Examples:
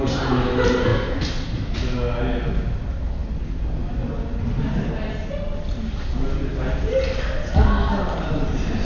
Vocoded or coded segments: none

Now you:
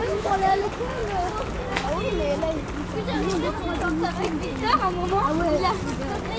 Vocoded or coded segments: 0.0-0.6

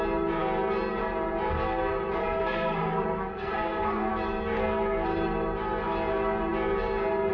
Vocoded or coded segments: 2.2-4.1

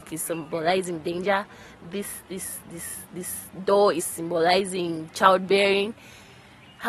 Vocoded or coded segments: 0.0-0.5

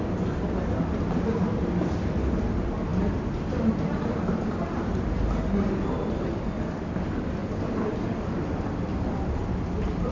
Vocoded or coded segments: none

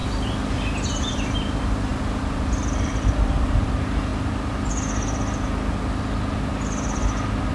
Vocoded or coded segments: none